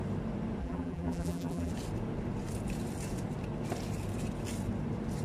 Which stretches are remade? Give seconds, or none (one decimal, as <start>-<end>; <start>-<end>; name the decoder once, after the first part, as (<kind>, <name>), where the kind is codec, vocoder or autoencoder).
0.6-1.7 (vocoder, BigVGAN v2)